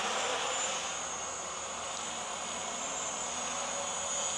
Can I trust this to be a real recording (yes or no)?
yes